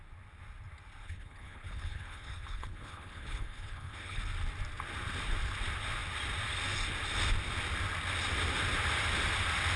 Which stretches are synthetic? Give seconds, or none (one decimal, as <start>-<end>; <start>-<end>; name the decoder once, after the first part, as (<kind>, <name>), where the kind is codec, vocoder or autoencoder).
1.0-4.2 (codec, HILCodec)